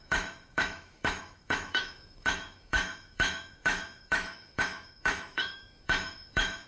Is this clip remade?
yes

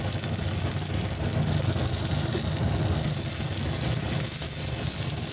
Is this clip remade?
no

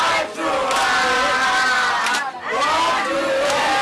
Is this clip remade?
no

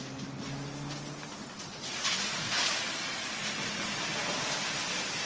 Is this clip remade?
no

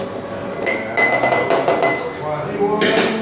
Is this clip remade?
no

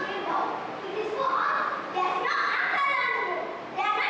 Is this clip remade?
no